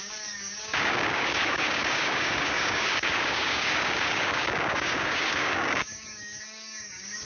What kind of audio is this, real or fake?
fake